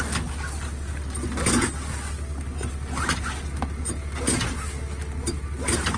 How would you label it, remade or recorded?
recorded